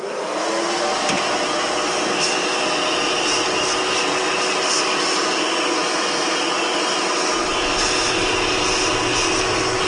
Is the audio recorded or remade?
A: recorded